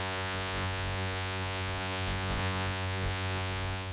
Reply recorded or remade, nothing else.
remade